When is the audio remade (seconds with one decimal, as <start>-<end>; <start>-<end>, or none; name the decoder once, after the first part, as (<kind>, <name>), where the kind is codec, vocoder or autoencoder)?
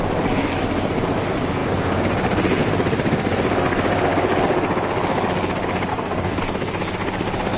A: 5.9-6.4 (codec, DAC)